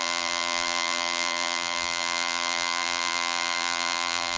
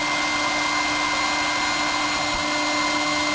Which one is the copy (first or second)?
first